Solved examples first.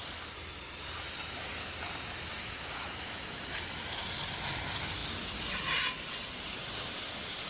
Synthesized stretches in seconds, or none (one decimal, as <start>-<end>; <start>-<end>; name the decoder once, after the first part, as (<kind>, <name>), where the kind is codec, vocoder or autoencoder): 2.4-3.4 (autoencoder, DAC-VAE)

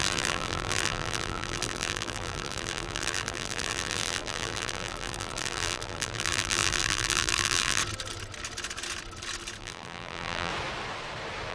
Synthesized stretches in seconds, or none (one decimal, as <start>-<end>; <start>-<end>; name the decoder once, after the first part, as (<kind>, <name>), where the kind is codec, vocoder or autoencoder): 0.0-7.8 (vocoder, BigVGAN v2); 9.6-10.5

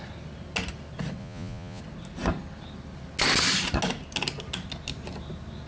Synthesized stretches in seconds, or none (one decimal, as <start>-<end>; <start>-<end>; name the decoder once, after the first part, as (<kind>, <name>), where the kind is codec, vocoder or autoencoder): 1.2-1.8 (vocoder, Vocos)